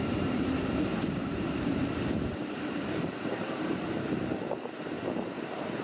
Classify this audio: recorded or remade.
remade